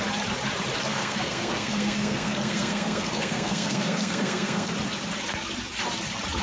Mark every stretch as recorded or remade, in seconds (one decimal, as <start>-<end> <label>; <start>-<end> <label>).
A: 0.0-0.9 recorded; 0.9-4.7 remade; 4.7-6.4 recorded